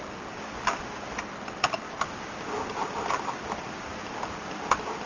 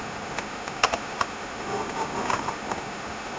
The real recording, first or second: first